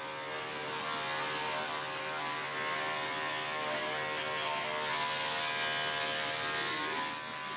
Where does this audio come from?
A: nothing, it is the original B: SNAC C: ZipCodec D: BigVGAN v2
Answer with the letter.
A